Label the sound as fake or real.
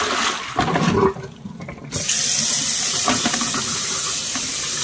real